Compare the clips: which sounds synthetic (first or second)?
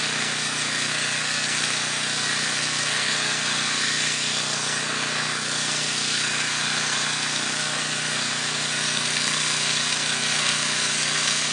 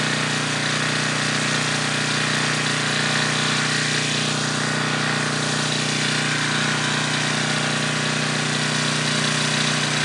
first